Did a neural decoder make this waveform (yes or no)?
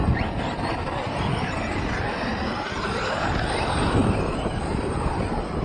no